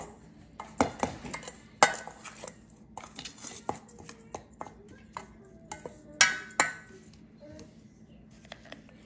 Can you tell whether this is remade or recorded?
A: recorded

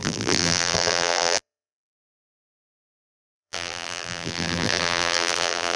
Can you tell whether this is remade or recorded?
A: remade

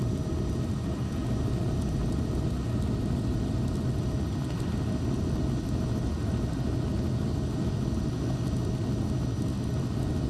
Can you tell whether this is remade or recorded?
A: recorded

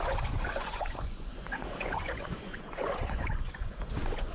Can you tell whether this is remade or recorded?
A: remade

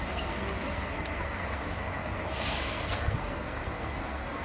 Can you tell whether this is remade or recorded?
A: remade